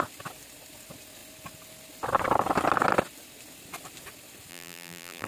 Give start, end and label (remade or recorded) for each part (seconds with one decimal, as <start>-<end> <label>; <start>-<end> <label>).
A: 0.0-4.5 recorded; 4.5-5.3 remade